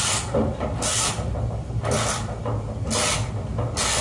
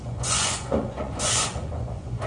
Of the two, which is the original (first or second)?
first